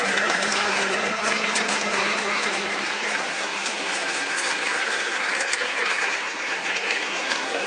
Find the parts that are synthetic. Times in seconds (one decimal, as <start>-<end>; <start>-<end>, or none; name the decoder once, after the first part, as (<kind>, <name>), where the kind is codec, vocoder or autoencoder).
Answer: 0.0-7.7 (codec, SNAC)